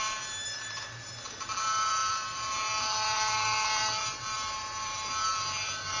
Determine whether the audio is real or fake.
fake